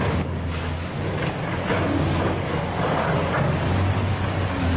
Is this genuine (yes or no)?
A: no